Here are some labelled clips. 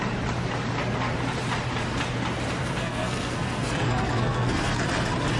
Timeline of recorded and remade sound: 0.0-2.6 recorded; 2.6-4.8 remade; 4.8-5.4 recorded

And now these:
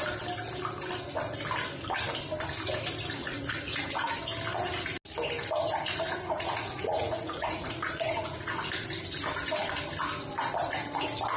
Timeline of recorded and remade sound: 0.0-3.2 recorded; 3.2-3.8 remade; 3.8-5.7 recorded; 5.7-8.5 remade; 8.5-11.4 recorded

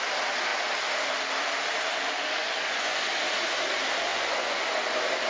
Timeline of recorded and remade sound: 0.0-2.4 recorded; 2.4-3.1 remade; 3.1-4.1 recorded; 4.1-4.7 remade; 4.7-5.3 recorded